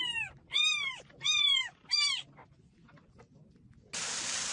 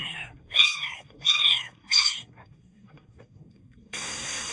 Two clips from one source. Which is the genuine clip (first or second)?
first